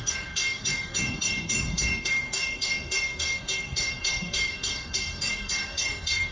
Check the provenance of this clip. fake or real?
fake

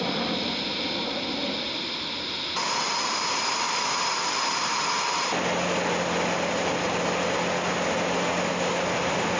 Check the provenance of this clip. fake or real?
real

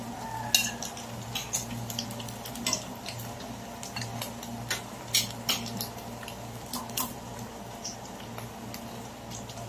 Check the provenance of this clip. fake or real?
real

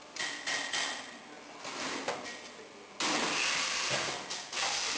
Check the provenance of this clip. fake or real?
real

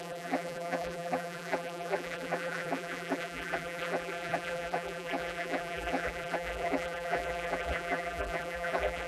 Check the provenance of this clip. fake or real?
fake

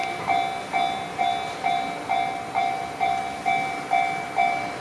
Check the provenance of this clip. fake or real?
real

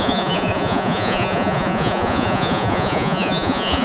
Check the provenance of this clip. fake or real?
fake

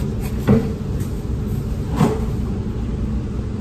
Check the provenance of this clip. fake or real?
real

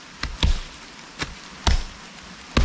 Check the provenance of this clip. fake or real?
real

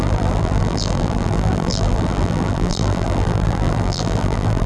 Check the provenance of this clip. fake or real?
fake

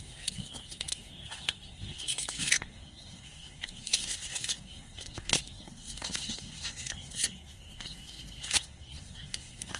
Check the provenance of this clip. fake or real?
fake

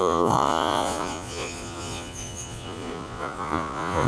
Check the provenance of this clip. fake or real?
fake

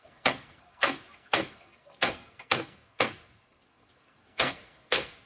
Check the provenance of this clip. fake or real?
fake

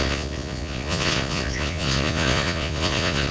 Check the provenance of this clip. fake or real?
fake